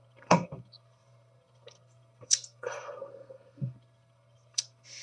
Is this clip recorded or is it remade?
remade